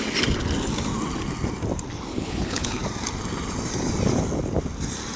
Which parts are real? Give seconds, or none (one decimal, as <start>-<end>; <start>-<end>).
0.0-2.1; 2.8-5.2

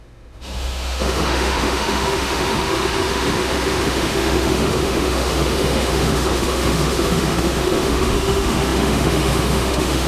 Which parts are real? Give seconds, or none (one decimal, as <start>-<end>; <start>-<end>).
none

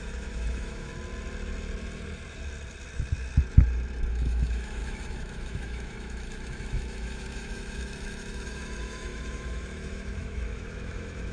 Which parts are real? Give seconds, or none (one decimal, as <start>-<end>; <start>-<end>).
0.9-4.1

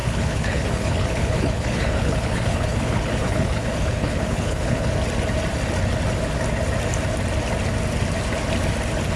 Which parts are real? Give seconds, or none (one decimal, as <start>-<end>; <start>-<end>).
4.9-9.2

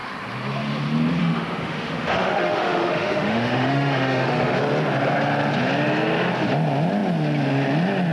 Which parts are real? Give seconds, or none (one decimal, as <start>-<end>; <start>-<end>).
0.0-1.2; 4.6-8.1